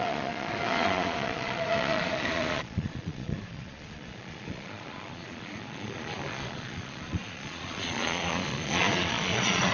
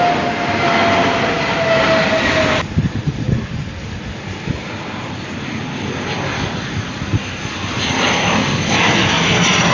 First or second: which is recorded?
second